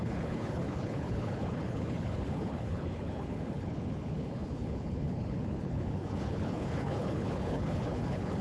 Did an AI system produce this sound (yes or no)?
yes